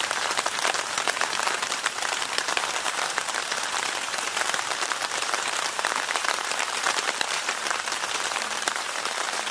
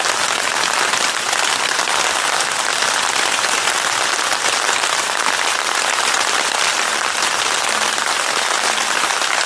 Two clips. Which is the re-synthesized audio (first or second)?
first